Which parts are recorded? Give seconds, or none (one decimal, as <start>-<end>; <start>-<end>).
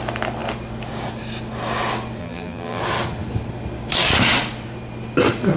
0.0-2.2; 2.8-5.6